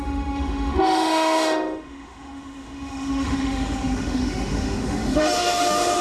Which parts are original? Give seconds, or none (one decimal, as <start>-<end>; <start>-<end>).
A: none